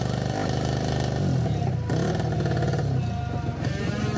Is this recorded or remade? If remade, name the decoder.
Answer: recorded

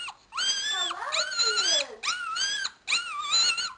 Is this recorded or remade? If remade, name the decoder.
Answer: recorded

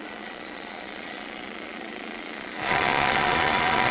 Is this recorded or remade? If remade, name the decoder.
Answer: remade, vocoder, Vocos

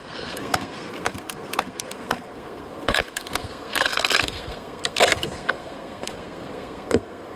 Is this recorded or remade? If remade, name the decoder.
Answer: remade, codec, SNAC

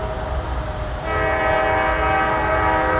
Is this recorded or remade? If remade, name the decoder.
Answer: recorded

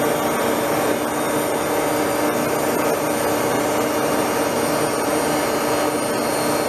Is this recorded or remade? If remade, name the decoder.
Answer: recorded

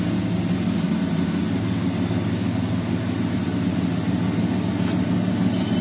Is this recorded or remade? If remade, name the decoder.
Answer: recorded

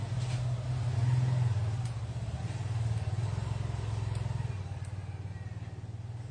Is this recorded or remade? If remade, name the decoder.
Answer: recorded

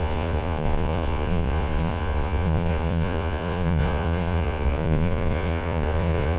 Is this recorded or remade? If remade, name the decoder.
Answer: remade, vocoder, Vocos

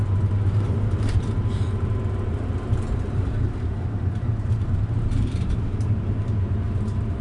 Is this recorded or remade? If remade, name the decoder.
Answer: remade, vocoder, BigVGAN v2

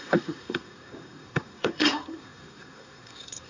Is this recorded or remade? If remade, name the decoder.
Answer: remade, codec, SNAC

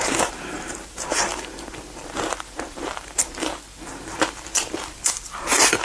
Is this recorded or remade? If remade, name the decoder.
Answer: remade, vocoder, BigVGAN v2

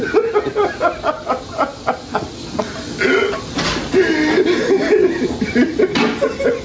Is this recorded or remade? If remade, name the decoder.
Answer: recorded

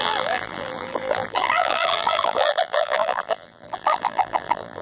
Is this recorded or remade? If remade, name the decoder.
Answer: remade, vocoder, BigVGAN v2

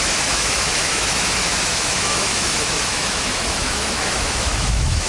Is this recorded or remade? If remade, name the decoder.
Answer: remade, autoencoder, DAC-VAE